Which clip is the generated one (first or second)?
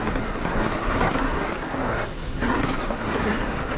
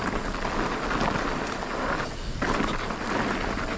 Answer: first